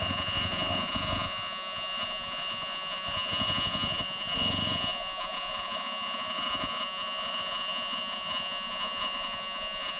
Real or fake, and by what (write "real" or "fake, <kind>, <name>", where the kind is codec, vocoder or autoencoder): fake, vocoder, Vocos